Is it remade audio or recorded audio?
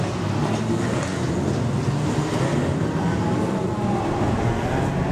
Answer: recorded